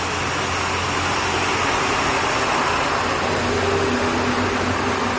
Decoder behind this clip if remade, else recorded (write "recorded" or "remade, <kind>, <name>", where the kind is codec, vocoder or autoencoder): recorded